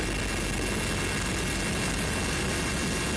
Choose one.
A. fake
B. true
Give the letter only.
B